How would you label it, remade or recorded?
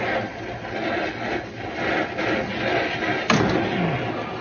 recorded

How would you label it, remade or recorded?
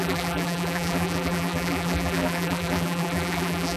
remade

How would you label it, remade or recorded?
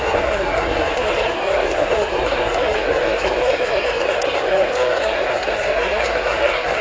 remade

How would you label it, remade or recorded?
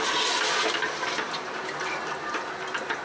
recorded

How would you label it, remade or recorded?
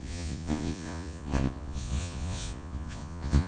remade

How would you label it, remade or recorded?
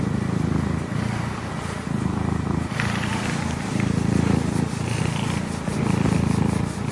recorded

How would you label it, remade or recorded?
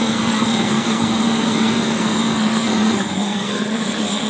remade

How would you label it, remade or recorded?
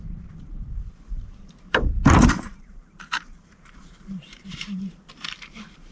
remade